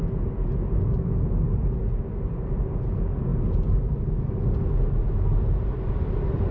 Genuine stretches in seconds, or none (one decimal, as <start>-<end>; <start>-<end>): 0.0-6.5